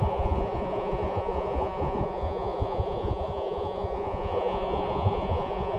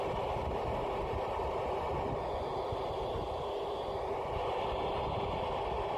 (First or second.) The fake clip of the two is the first